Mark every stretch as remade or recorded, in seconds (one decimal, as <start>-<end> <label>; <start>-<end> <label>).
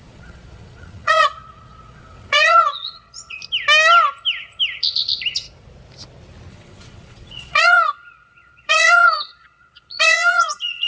0.0-3.4 remade; 3.4-6.5 recorded; 6.5-10.9 remade